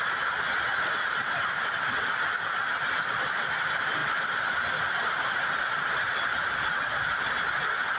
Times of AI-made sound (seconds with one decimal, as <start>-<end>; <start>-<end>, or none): none